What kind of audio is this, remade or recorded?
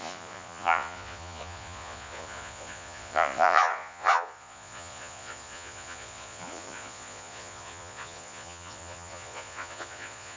remade